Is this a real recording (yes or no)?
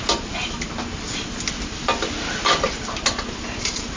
yes